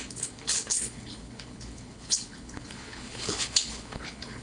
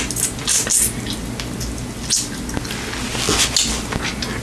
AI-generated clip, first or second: first